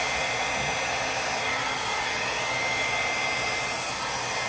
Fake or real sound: real